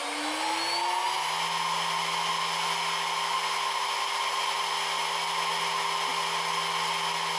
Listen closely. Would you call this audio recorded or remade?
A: recorded